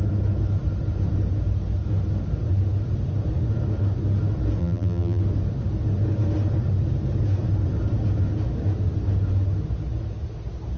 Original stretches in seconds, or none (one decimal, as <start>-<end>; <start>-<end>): 0.0-4.6; 5.2-10.8